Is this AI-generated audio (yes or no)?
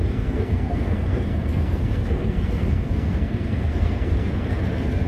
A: yes